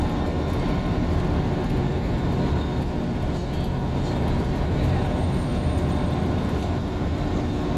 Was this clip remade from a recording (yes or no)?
no